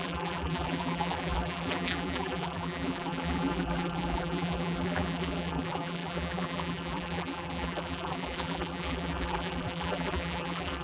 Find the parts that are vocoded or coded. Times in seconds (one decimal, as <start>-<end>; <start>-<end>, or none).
0.0-10.8